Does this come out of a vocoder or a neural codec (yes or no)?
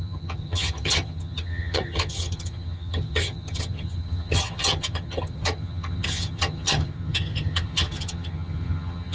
yes